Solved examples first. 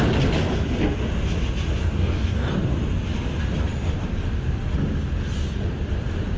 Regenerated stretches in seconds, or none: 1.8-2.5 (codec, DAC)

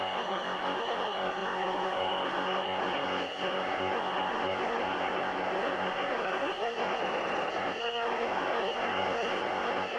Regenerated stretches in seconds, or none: 0.0-7.0 (codec, SNAC); 7.5-10.0

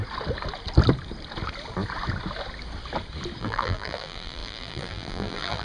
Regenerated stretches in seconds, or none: 3.4-5.6 (vocoder, BigVGAN v2)

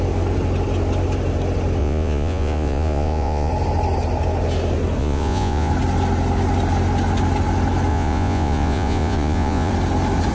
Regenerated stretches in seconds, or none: 1.8-3.5 (vocoder, Vocos); 5.0-5.7; 7.9-9.7